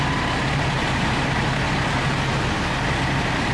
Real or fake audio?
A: real